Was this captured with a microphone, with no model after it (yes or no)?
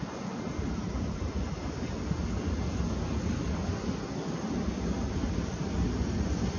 yes